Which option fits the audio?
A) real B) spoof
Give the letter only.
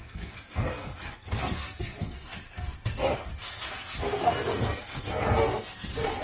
B